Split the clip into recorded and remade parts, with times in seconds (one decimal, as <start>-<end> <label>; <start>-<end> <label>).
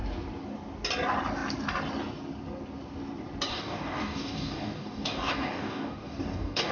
0.0-3.5 recorded; 3.5-6.7 remade